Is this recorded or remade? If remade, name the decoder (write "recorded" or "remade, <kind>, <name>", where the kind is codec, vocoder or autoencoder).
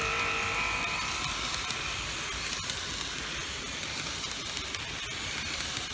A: recorded